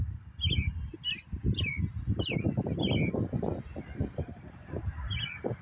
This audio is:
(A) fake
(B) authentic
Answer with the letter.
B